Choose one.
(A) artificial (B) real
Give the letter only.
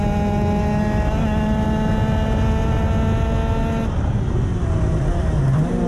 B